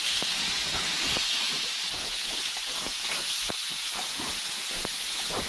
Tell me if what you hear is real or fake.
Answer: fake